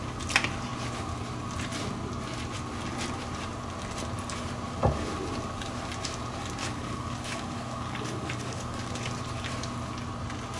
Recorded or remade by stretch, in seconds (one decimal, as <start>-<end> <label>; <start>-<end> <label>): 0.0-6.6 recorded; 6.6-8.9 remade; 8.9-10.6 recorded